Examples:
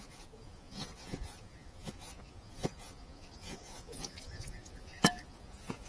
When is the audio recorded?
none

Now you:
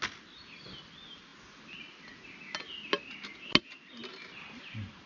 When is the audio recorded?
0.0-5.1

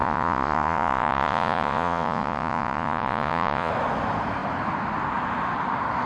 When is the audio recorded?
3.7-6.1

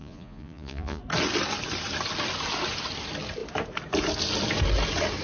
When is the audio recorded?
1.0-5.2

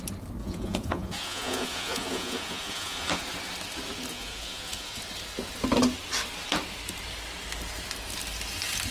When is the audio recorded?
0.0-0.4; 3.2-4.1; 5.0-8.9

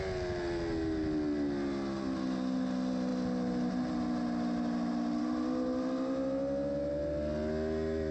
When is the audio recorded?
0.0-8.1

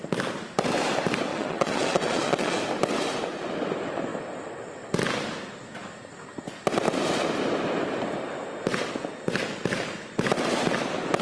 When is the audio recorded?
0.0-1.3; 2.6-11.2